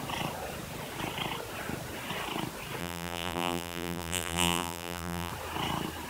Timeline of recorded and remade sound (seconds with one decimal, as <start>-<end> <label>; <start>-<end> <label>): 0.0-2.8 recorded; 2.8-5.3 remade; 5.3-6.1 recorded

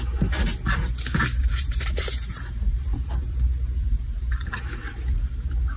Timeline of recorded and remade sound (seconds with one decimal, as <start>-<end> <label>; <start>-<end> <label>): 0.0-0.5 remade; 0.5-1.4 recorded; 1.4-5.8 remade